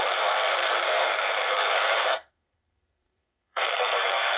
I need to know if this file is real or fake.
fake